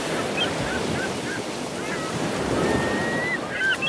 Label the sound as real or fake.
real